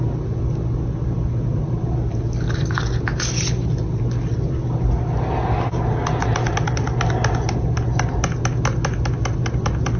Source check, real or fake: real